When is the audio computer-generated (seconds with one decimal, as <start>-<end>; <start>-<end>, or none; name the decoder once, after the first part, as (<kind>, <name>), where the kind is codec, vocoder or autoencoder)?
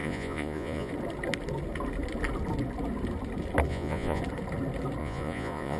0.0-0.9 (vocoder, Vocos); 3.7-4.2; 5.0-5.8